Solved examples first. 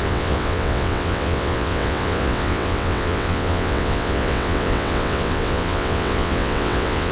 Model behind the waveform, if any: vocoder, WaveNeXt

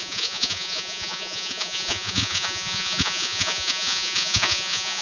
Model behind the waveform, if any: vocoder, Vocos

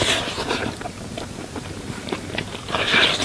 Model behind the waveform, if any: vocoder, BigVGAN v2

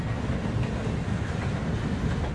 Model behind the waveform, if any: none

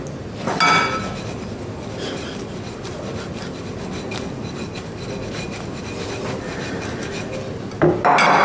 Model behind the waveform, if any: none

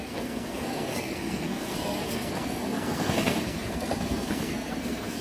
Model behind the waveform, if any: codec, SNAC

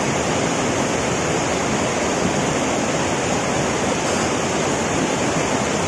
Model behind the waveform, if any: none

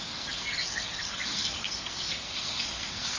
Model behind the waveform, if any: codec, SNAC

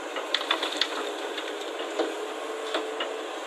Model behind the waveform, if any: none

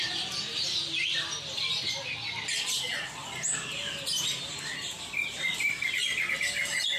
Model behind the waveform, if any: none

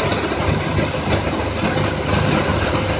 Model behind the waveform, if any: none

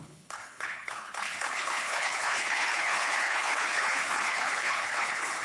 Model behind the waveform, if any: codec, HILCodec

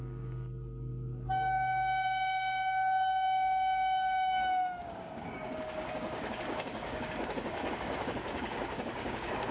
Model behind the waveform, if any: codec, DAC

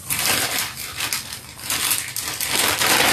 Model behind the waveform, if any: none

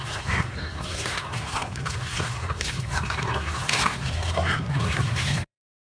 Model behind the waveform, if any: codec, SNAC